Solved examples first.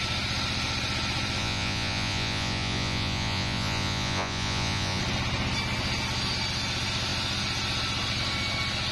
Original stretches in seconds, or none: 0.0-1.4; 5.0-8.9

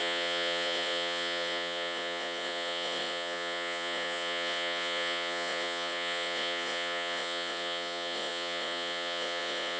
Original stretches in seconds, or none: none

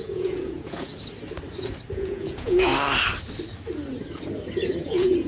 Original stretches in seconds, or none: 0.9-1.9; 2.7-4.8

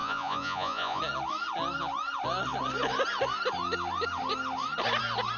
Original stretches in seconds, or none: 1.0-5.4

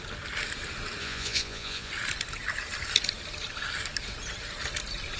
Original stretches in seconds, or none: 0.0-1.0; 1.9-5.2